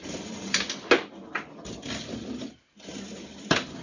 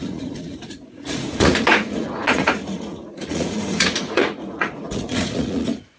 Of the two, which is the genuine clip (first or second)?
first